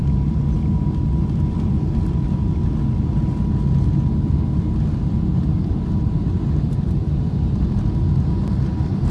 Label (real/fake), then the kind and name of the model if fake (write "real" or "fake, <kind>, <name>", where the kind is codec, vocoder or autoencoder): real